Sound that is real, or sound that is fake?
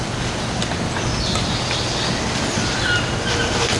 real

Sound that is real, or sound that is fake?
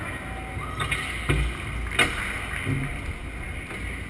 real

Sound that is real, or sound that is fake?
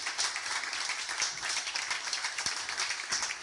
real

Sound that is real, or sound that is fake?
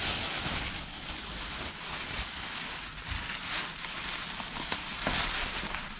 real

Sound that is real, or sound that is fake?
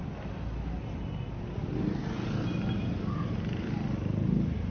real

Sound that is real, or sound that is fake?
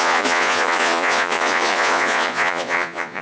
fake